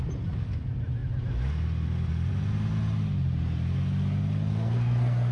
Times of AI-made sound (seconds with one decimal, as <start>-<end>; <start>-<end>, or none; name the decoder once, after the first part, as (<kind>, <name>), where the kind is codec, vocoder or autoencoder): 4.5-5.3 (codec, SNAC)